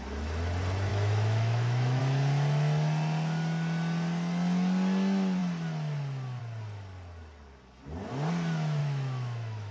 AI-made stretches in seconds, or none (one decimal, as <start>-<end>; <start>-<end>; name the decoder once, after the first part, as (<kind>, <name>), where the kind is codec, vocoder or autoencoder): 0.9-2.0 (autoencoder, DAC-VAE); 8.8-9.7